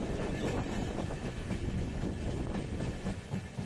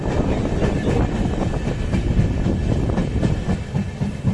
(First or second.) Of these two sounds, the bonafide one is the second